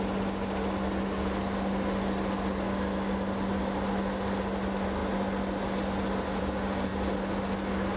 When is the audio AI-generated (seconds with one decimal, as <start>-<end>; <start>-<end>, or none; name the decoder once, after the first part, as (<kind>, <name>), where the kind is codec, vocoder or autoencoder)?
none